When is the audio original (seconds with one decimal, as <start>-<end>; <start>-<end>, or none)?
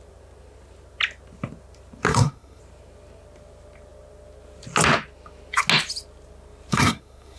0.0-2.1; 2.6-6.7